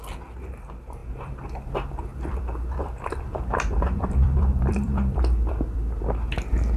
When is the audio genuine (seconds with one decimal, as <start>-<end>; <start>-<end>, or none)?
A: 0.0-1.0; 1.7-2.1; 6.0-6.8